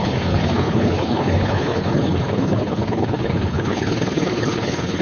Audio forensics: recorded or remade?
remade